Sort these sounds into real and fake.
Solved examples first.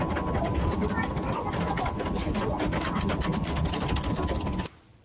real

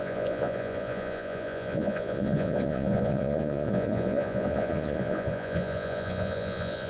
fake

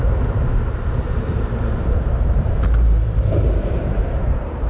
fake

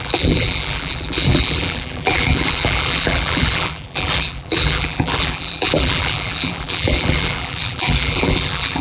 fake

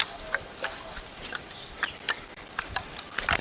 real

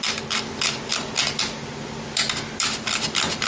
real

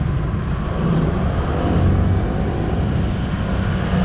real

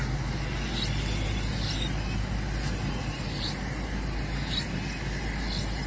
real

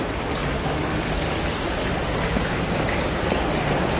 real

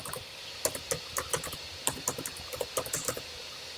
real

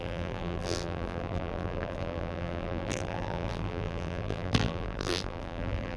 fake